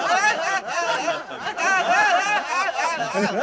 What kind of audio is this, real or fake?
fake